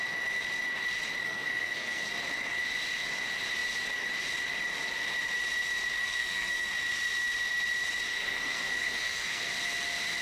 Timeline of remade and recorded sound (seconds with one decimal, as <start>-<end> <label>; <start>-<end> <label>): 0.0-1.2 recorded; 1.2-2.1 remade; 2.1-6.0 recorded; 6.0-6.7 remade; 6.7-8.1 recorded; 8.1-9.5 remade; 9.5-10.2 recorded